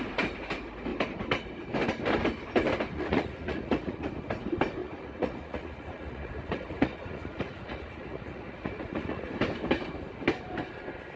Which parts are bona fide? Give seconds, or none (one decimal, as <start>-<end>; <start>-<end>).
0.0-2.9; 4.1-4.8; 9.3-11.2